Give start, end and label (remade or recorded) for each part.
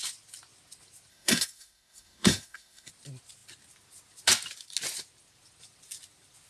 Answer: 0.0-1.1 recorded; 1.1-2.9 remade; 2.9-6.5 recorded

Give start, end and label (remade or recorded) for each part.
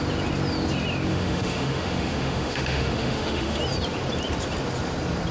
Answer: 0.0-1.1 recorded; 1.1-3.6 remade; 3.6-5.3 recorded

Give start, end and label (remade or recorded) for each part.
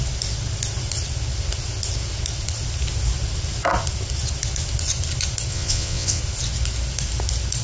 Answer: 0.0-5.5 recorded; 5.5-6.2 remade; 6.2-7.6 recorded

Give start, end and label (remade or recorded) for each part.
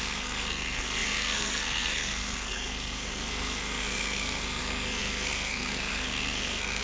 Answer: 0.0-6.8 remade